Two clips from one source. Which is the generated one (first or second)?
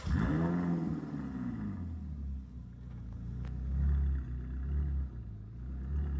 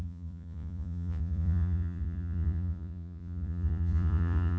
second